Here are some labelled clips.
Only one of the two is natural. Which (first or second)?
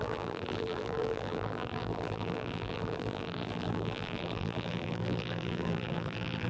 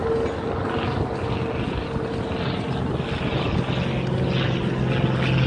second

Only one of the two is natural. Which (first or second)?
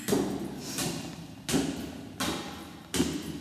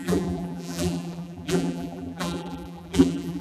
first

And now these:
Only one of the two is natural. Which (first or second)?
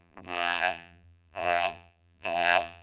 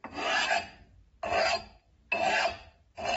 second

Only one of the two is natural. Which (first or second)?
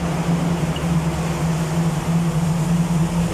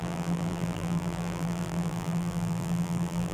first